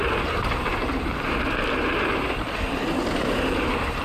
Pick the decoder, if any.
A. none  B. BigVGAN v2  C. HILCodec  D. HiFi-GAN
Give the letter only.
B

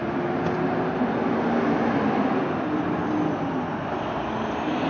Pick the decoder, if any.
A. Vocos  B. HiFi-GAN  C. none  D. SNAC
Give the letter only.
C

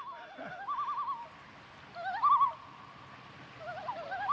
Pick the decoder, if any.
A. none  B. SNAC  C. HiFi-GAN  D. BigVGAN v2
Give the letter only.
A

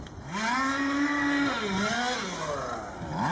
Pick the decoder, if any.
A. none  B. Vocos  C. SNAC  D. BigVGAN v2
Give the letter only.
A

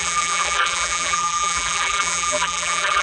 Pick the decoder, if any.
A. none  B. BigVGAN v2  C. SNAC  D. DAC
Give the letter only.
B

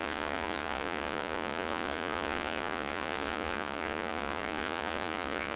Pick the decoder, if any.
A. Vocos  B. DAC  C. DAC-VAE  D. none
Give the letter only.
A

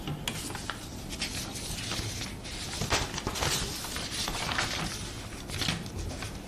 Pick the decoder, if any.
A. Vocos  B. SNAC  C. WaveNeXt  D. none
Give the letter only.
D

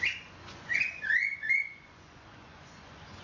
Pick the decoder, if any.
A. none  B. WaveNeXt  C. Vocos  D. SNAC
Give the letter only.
C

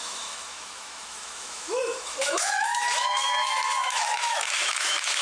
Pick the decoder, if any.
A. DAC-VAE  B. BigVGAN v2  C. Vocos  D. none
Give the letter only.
A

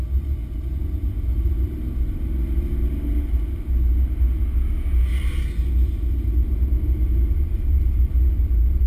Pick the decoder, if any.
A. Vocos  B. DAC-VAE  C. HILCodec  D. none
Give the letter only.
D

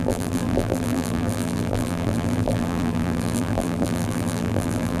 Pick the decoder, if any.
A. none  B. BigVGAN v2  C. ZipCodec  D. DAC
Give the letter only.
B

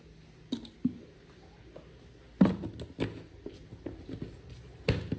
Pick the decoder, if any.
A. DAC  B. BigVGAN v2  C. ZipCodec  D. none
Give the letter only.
D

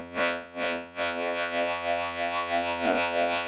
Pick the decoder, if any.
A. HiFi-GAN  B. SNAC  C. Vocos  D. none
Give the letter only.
C